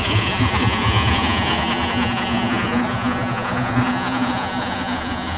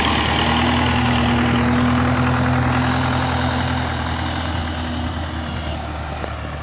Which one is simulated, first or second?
first